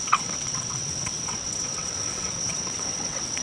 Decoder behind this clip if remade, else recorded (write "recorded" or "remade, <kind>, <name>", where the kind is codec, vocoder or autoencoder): remade, vocoder, WaveNeXt